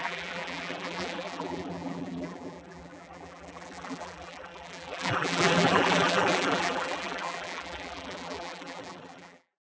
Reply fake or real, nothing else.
fake